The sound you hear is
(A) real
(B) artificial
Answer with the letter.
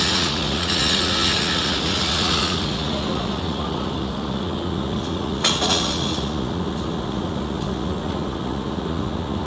B